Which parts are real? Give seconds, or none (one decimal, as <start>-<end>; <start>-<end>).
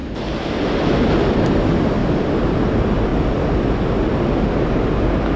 0.0-2.0; 2.6-5.4